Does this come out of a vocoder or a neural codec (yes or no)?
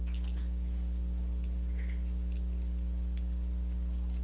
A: no